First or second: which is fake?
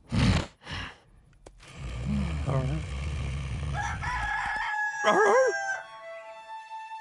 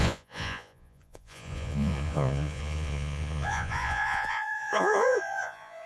second